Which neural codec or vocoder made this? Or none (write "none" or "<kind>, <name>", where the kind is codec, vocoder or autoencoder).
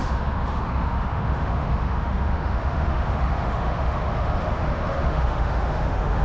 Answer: autoencoder, DAC-VAE